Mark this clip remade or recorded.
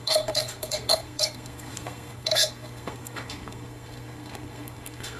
remade